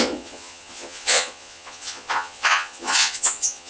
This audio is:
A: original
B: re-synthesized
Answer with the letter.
B